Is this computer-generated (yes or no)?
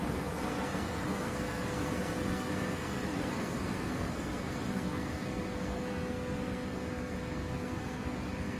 yes